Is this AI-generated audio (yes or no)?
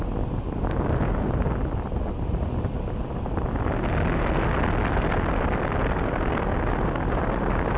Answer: no